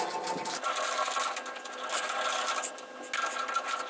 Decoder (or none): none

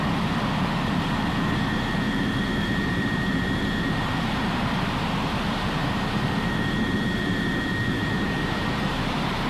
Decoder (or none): vocoder, BigVGAN v2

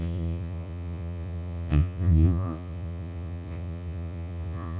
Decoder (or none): vocoder, Vocos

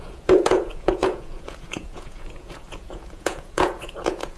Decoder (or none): vocoder, Vocos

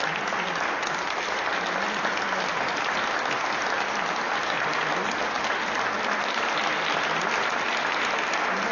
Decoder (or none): none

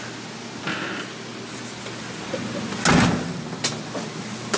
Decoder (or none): none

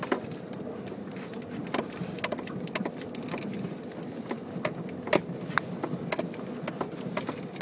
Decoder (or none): none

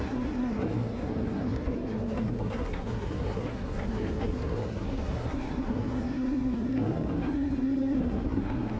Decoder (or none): codec, SNAC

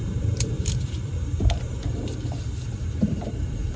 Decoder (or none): vocoder, BigVGAN v2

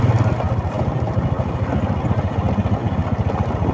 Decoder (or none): none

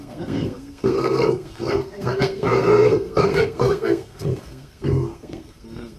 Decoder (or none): codec, SNAC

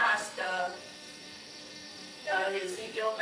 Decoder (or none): codec, SNAC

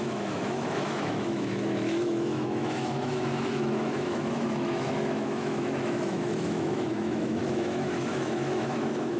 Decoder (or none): autoencoder, DAC-VAE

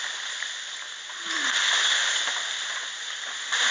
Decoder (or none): none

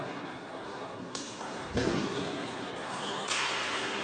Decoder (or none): codec, SNAC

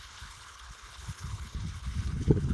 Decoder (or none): codec, HILCodec